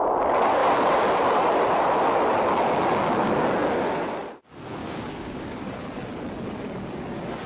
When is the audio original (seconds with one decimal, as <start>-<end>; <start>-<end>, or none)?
0.0-4.8; 5.7-7.5